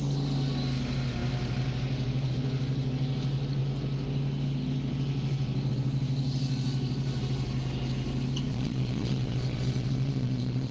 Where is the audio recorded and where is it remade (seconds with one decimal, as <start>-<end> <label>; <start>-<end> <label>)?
0.0-8.5 recorded; 8.5-10.7 remade